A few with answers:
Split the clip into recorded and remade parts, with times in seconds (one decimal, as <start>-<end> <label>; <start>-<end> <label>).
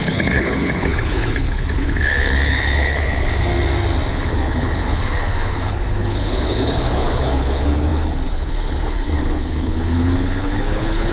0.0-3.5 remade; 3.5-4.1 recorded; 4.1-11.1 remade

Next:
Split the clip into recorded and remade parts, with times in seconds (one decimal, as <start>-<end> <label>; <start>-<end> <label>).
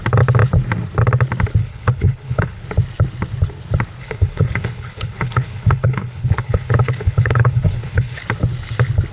0.0-1.6 recorded; 1.6-2.6 remade; 2.6-4.0 recorded; 4.0-8.2 remade; 8.2-9.1 recorded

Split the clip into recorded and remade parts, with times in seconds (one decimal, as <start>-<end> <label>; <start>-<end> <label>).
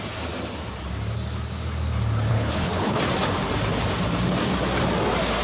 0.0-2.3 recorded; 2.3-3.0 remade; 3.0-5.4 recorded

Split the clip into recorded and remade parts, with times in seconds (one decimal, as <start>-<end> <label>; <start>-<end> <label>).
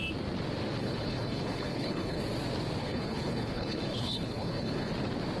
0.0-0.8 recorded; 0.8-2.2 remade; 2.2-2.8 recorded; 2.8-4.9 remade; 4.9-5.4 recorded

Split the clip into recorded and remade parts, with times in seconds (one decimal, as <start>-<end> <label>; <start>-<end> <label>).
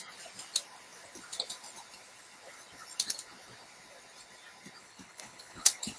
0.0-4.8 recorded; 4.8-6.0 remade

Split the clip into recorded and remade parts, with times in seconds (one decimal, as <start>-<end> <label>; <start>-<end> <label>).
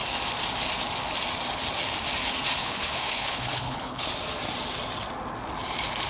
0.0-2.6 recorded; 2.6-4.1 remade; 4.1-6.1 recorded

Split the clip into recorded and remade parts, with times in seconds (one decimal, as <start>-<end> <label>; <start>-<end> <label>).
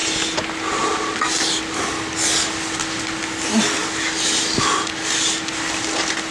0.0-6.3 recorded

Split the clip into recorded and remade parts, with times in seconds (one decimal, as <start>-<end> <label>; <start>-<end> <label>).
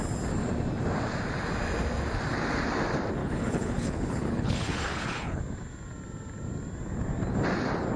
0.0-3.2 recorded; 3.2-5.4 remade; 5.4-8.0 recorded